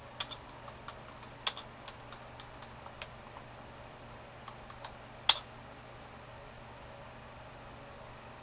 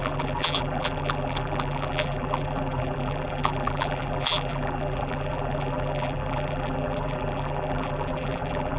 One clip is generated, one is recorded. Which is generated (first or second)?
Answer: second